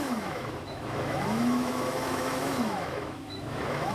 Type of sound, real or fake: fake